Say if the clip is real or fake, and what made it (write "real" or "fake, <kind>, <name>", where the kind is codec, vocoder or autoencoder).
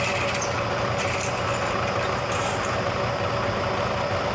real